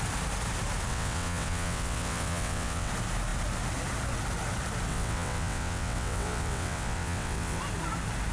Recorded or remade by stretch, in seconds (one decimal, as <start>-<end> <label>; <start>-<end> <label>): 0.0-0.9 recorded; 0.9-2.9 remade; 2.9-4.9 recorded; 4.9-7.6 remade; 7.6-8.3 recorded